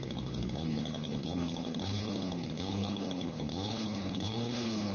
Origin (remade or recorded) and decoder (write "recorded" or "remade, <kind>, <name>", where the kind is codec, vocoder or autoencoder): remade, codec, HILCodec